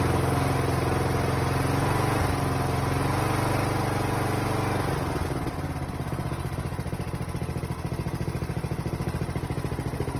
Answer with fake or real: real